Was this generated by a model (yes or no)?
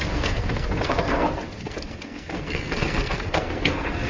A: yes